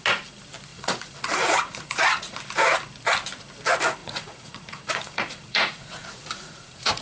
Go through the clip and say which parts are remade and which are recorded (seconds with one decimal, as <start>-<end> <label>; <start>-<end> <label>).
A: 0.0-0.7 recorded; 0.7-2.4 remade; 2.4-4.0 recorded; 4.0-7.0 remade